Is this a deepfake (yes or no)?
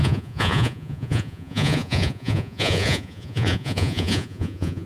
yes